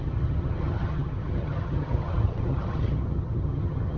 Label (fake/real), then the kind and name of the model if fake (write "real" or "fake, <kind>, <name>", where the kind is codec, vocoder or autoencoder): fake, vocoder, HiFi-GAN